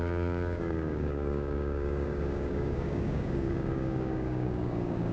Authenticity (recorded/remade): remade